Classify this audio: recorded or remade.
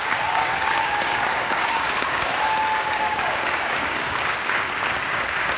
remade